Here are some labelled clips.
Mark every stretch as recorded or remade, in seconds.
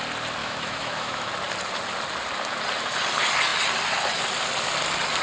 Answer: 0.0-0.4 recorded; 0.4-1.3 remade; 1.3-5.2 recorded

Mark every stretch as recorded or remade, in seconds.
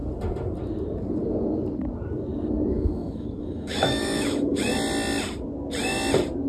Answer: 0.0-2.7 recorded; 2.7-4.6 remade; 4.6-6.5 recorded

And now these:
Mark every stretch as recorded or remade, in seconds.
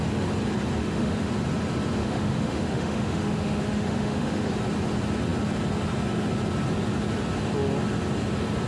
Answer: 0.0-0.8 recorded; 0.8-1.3 remade; 1.3-2.0 recorded; 2.0-4.5 remade; 4.5-8.7 recorded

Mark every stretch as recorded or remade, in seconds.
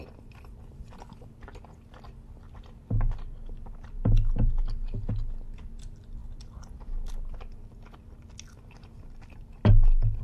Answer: 0.0-10.2 recorded